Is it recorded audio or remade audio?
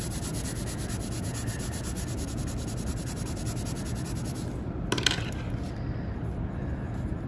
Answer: recorded